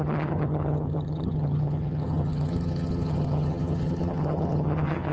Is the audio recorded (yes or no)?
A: no